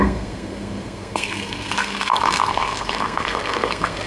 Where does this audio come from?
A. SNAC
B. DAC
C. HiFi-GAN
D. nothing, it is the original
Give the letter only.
A